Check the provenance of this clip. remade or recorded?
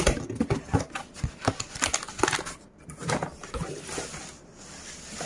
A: recorded